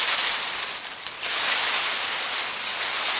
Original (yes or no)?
yes